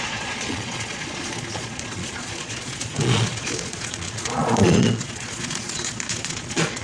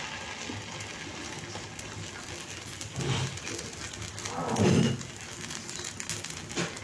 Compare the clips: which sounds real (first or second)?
second